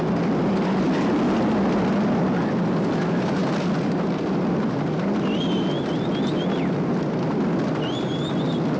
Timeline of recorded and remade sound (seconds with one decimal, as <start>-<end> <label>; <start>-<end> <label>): 0.0-8.8 recorded

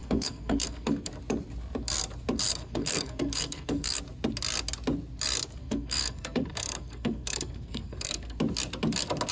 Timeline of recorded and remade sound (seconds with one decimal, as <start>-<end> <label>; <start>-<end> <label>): 0.0-1.1 remade; 1.1-2.5 recorded; 2.5-4.0 remade; 4.0-5.6 recorded; 5.6-8.4 remade; 8.4-9.3 recorded